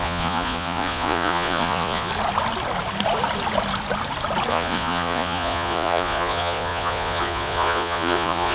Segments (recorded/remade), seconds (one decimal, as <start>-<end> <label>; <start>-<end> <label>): 0.0-2.1 remade; 2.1-4.5 recorded; 4.5-8.5 remade